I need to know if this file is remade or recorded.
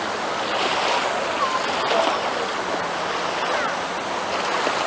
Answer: recorded